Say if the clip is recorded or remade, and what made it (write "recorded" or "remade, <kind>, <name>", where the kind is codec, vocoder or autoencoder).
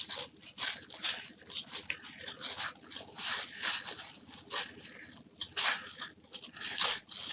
recorded